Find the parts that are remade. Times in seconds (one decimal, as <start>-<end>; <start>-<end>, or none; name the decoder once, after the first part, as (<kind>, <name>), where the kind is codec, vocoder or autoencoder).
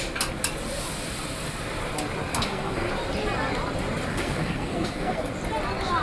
2.3-2.9 (codec, SNAC); 4.1-5.3